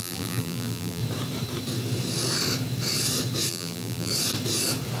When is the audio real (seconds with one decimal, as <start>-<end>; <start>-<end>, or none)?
1.0-3.5; 4.1-5.0